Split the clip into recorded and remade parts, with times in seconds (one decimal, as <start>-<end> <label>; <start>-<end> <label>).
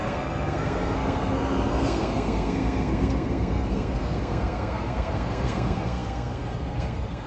0.0-7.3 remade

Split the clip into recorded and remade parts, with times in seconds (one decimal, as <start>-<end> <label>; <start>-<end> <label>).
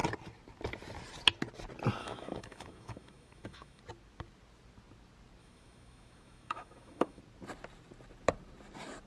0.0-2.0 recorded; 2.0-3.8 remade; 3.8-5.4 recorded; 5.4-7.2 remade; 7.2-9.1 recorded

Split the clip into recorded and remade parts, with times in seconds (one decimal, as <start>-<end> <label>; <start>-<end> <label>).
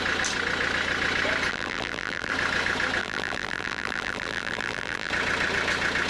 0.0-1.5 recorded; 1.5-2.3 remade; 2.3-3.0 recorded; 3.0-5.1 remade; 5.1-6.1 recorded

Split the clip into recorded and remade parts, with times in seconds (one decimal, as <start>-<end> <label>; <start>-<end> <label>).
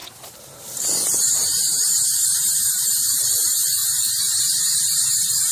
0.0-3.8 remade; 3.8-4.4 recorded; 4.4-5.5 remade